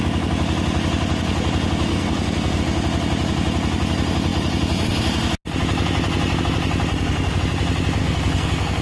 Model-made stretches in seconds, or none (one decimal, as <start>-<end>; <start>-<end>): 1.9-2.6; 6.9-7.4; 8.0-8.8